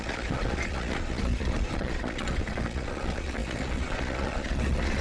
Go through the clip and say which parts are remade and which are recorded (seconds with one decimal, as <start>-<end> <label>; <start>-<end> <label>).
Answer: 0.0-5.0 remade